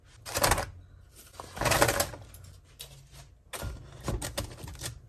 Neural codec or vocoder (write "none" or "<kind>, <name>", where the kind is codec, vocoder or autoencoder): none